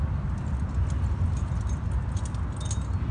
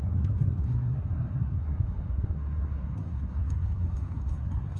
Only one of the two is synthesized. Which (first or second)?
second